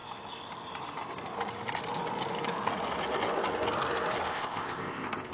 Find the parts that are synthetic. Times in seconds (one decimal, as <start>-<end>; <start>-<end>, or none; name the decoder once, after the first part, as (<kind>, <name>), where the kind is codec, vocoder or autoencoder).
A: 4.3-5.3 (codec, ZipCodec)